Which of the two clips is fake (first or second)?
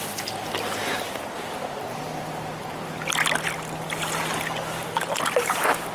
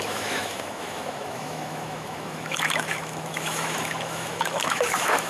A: second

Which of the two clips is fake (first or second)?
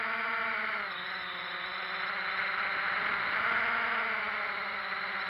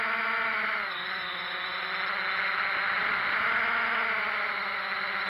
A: first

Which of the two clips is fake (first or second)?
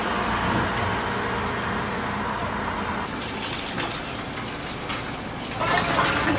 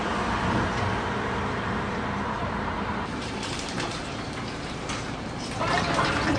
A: second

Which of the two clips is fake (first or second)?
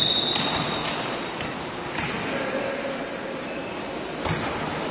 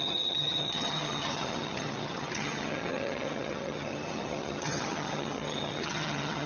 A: second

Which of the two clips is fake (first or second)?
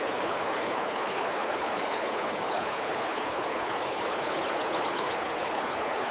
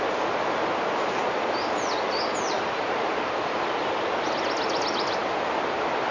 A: first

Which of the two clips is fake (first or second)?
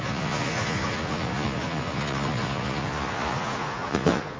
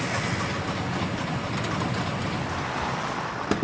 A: first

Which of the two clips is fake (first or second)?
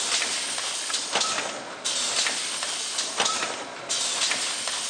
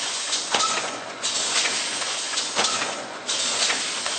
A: second